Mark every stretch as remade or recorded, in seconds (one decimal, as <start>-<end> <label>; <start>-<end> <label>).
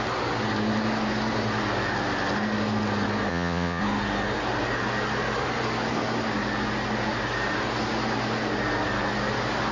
0.0-3.3 recorded; 3.3-3.8 remade; 3.8-9.7 recorded